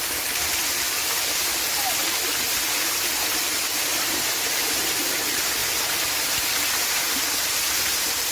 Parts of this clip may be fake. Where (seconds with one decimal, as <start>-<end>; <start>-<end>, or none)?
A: none